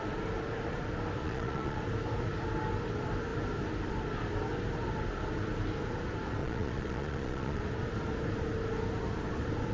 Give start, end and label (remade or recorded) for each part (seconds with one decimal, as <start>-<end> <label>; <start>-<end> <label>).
0.0-1.2 recorded; 1.2-1.8 remade; 1.8-6.4 recorded; 6.4-7.6 remade; 7.6-9.7 recorded